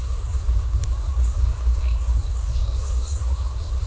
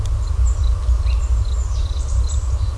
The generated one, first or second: first